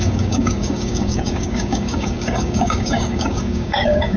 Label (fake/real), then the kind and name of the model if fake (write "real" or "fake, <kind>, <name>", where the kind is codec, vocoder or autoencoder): fake, codec, DAC